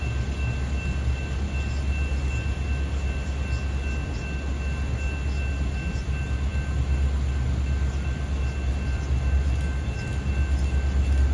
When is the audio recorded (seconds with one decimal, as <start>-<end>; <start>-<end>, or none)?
0.0-11.3